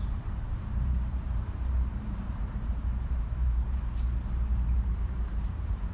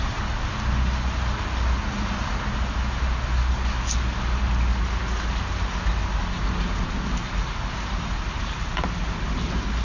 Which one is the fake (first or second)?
first